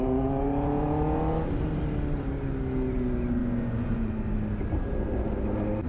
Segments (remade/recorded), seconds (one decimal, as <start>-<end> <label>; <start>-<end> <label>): 0.0-3.4 recorded; 3.4-4.1 remade; 4.1-5.9 recorded